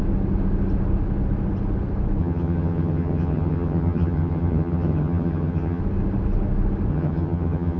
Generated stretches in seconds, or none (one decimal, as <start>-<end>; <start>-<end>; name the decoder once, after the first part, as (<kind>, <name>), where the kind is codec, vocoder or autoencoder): 2.2-5.8 (vocoder, HiFi-GAN); 6.9-7.8